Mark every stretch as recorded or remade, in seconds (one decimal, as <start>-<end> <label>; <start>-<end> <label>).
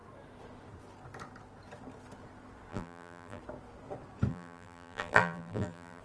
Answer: 0.0-2.7 recorded; 2.7-3.4 remade; 3.4-4.3 recorded; 4.3-6.0 remade